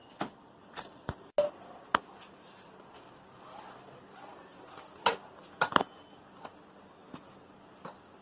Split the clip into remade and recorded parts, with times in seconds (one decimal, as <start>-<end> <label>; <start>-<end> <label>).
0.0-1.1 remade; 1.1-7.0 recorded; 7.0-7.5 remade; 7.5-8.2 recorded